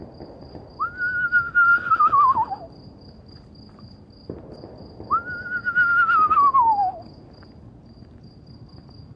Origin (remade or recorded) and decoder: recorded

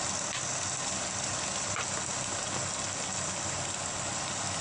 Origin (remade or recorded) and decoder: recorded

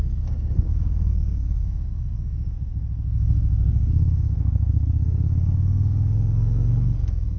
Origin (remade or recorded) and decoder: remade, codec, SNAC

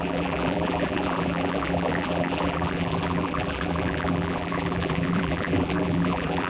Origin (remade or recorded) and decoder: remade, vocoder, BigVGAN v2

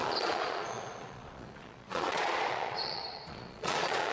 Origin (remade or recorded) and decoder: remade, vocoder, Vocos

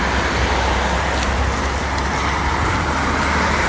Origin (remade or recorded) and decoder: recorded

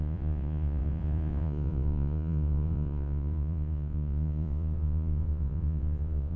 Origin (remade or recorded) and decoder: remade, vocoder, Vocos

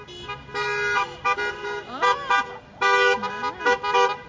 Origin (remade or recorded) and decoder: recorded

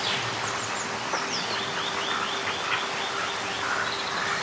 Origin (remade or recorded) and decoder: remade, vocoder, BigVGAN v2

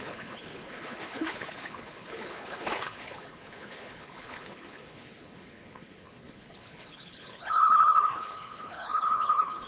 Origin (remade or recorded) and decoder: remade, codec, HILCodec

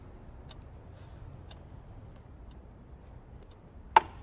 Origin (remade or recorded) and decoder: recorded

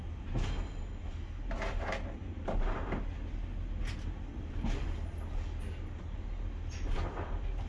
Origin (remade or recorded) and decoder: recorded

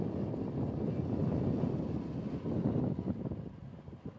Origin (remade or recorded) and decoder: recorded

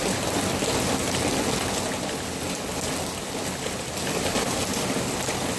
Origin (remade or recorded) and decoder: recorded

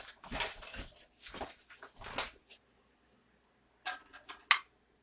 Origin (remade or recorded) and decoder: recorded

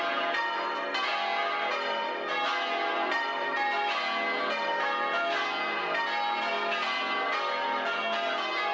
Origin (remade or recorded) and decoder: recorded